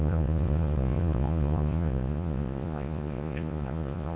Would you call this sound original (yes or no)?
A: no